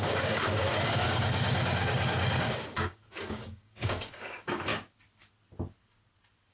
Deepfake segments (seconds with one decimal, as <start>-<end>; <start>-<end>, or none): 0.0-4.7